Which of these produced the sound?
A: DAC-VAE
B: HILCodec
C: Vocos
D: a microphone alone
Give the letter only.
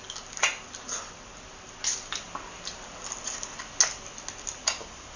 D